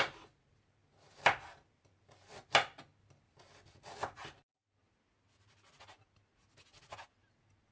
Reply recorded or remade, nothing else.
recorded